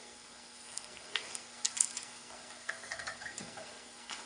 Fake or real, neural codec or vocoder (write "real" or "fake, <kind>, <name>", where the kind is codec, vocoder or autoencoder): fake, codec, SNAC